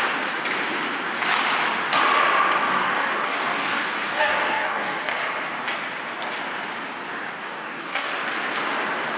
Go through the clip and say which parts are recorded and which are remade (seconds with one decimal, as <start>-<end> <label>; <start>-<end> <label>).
0.0-2.6 recorded; 2.6-5.0 remade; 5.0-7.4 recorded; 7.4-8.1 remade; 8.1-9.2 recorded